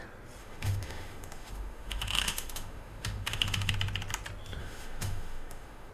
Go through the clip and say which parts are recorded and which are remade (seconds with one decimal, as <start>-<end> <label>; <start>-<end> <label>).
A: 0.0-0.4 recorded; 0.4-3.7 remade; 3.7-4.6 recorded; 4.6-5.9 remade